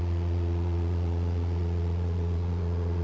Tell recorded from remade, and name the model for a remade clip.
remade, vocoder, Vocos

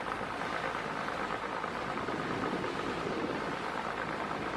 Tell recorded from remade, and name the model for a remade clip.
recorded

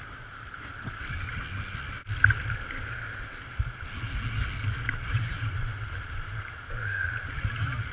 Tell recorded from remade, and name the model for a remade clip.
recorded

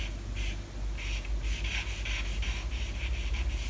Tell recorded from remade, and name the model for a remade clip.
recorded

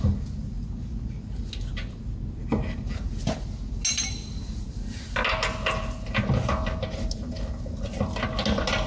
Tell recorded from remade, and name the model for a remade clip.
recorded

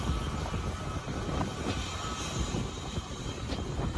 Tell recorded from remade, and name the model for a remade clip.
recorded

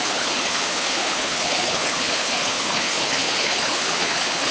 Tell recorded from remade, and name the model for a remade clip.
remade, codec, HILCodec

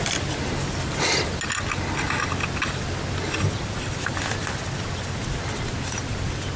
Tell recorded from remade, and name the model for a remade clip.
recorded